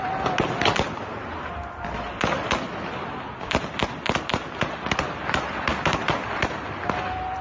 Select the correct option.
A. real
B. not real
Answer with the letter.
A